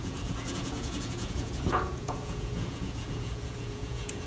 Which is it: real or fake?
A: fake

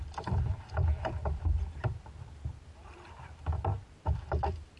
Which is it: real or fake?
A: real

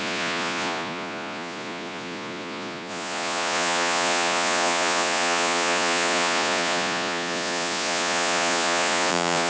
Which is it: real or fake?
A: fake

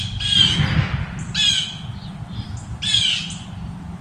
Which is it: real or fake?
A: real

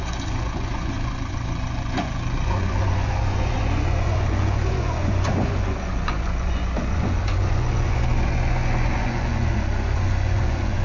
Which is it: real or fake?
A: fake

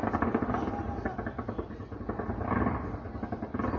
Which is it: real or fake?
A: real